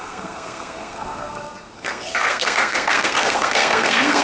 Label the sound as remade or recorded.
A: remade